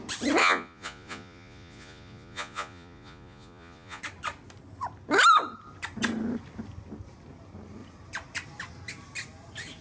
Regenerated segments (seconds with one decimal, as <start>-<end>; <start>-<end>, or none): 0.4-4.0